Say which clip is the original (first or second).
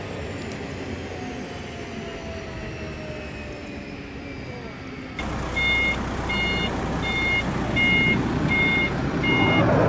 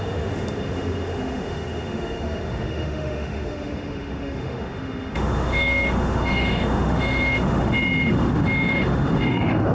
first